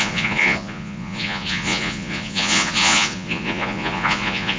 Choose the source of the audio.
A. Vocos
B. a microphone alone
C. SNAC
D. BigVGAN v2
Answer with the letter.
A